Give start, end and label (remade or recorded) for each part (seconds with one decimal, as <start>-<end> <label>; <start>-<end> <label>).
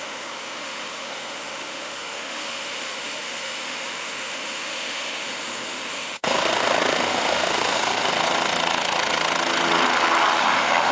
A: 0.0-8.1 remade; 8.1-10.4 recorded; 10.4-10.9 remade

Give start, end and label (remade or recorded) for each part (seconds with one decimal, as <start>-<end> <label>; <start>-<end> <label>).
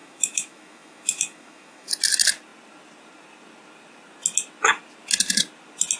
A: 0.0-1.9 remade; 1.9-6.0 recorded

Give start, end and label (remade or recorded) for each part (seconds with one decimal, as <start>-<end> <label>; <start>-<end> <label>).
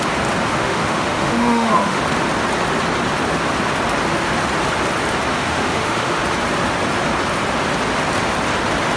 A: 0.0-0.5 recorded; 0.5-2.0 remade; 2.0-5.3 recorded; 5.3-6.2 remade; 6.2-9.0 recorded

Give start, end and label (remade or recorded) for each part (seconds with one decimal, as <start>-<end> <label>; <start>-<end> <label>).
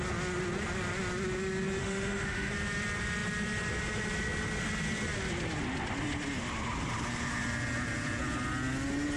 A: 0.0-1.8 recorded; 1.8-2.5 remade; 2.5-9.2 recorded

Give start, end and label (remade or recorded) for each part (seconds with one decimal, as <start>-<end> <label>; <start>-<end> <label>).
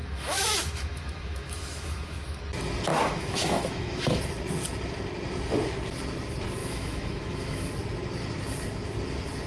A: 0.0-2.4 remade; 2.4-2.9 recorded; 2.9-4.2 remade; 4.2-6.6 recorded; 6.6-7.7 remade; 7.7-9.5 recorded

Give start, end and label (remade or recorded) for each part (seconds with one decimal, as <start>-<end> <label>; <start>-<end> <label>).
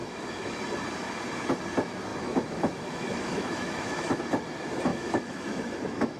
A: 0.0-0.6 remade; 0.6-2.1 recorded; 2.1-4.2 remade; 4.2-4.9 recorded; 4.9-6.2 remade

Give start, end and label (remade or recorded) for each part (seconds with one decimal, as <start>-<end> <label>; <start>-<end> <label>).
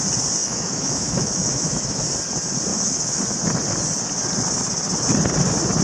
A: 0.0-0.4 recorded; 0.4-2.0 remade; 2.0-2.7 recorded; 2.7-3.2 remade; 3.2-5.8 recorded